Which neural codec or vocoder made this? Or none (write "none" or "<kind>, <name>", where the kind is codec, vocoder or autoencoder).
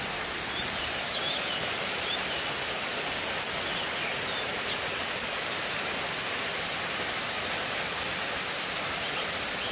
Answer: none